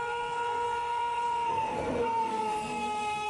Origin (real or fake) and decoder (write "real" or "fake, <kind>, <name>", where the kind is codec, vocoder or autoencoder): fake, codec, SNAC